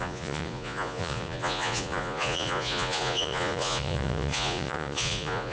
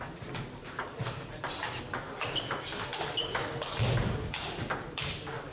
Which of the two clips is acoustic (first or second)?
second